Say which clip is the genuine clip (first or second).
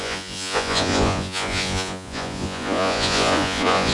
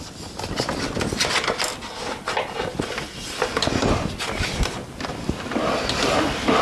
second